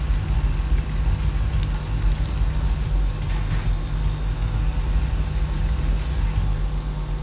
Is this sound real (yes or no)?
yes